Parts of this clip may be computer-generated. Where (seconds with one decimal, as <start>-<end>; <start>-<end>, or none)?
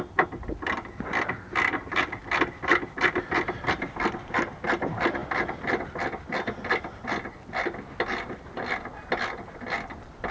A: none